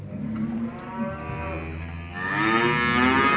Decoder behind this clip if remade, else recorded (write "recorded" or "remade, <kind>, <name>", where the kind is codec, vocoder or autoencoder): recorded